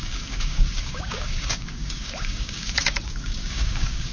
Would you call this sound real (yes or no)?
no